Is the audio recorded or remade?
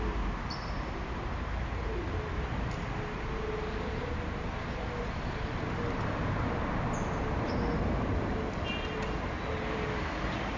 recorded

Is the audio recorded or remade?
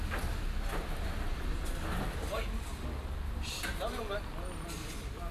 recorded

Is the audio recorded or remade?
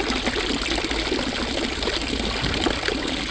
recorded